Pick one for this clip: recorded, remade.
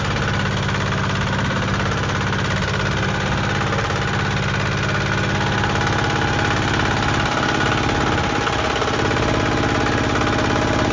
recorded